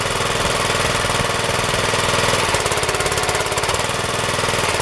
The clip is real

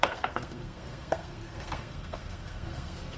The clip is fake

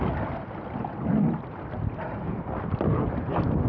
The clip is real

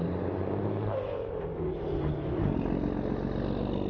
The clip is real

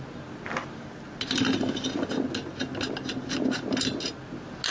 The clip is real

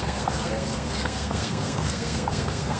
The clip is fake